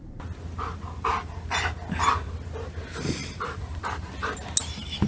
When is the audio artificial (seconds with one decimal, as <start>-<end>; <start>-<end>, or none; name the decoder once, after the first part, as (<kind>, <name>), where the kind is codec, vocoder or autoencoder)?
3.2-3.8 (vocoder, BigVGAN v2)